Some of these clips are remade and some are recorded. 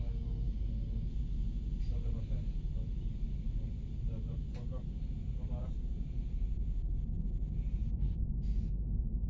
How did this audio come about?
recorded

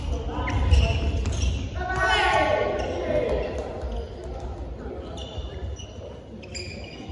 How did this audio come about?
recorded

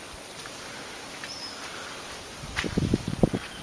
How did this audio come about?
recorded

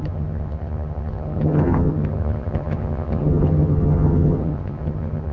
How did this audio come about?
remade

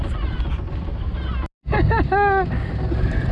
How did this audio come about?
recorded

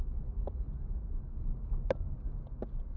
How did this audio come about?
recorded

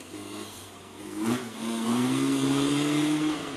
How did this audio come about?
remade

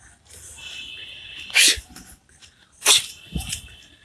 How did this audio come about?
recorded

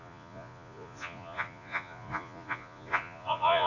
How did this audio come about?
remade